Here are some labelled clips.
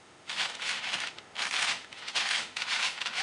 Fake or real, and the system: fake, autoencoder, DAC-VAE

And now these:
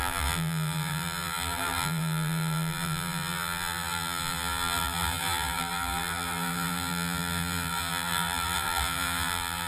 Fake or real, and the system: fake, vocoder, BigVGAN v2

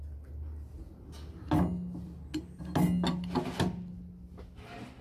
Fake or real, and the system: real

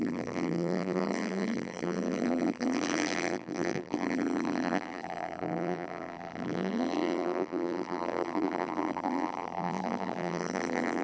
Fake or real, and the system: fake, vocoder, BigVGAN v2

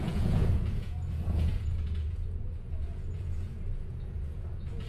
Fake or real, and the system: fake, vocoder, Vocos